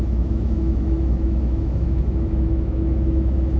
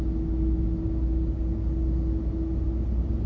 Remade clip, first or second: first